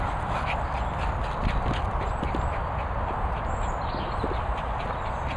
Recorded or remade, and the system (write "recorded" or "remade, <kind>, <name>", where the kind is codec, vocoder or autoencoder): recorded